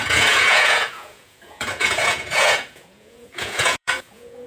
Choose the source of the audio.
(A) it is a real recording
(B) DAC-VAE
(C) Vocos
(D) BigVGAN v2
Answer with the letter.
C